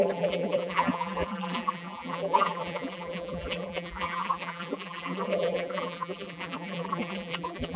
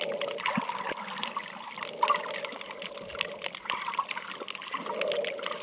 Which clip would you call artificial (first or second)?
first